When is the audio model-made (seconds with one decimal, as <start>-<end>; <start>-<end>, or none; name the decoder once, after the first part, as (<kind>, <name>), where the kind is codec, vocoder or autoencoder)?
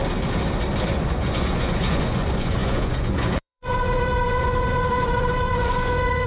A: 0.9-6.3 (vocoder, Vocos)